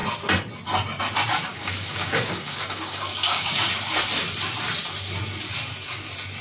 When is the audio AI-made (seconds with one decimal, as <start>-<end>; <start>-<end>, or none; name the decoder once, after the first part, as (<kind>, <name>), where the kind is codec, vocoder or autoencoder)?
1.5-3.5 (codec, DAC)